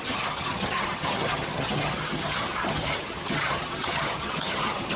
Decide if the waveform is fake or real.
fake